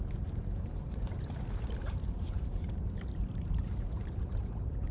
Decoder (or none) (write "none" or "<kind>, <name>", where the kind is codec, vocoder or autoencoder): vocoder, BigVGAN v2